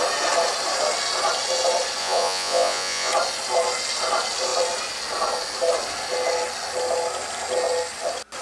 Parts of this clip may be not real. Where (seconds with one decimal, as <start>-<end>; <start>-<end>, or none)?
2.0-3.1